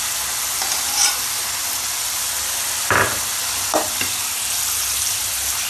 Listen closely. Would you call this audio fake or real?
real